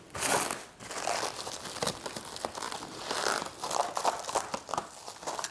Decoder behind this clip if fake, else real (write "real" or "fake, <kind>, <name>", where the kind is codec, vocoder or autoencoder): real